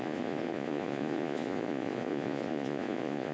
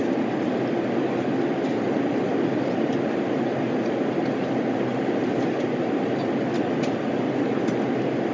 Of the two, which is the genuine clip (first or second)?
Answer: second